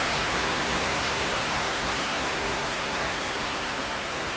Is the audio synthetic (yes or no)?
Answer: yes